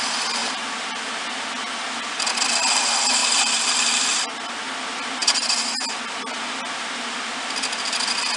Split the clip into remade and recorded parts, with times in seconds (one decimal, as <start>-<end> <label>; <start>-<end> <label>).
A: 0.0-8.4 recorded